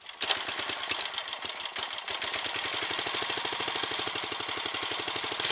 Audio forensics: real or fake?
real